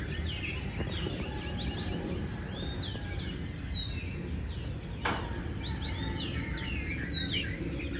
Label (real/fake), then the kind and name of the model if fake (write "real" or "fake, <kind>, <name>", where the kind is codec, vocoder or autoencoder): real